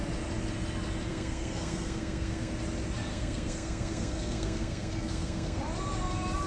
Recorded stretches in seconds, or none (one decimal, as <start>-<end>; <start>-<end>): 0.0-1.1; 2.5-3.1; 5.6-6.5